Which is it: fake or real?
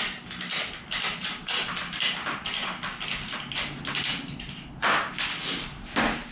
real